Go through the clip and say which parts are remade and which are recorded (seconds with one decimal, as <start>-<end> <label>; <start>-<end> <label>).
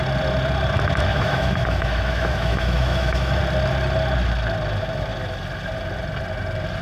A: 0.0-1.1 recorded; 1.1-3.4 remade; 3.4-6.8 recorded